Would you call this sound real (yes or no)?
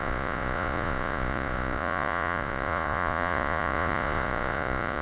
no